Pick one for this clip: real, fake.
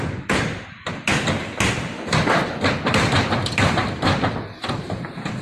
fake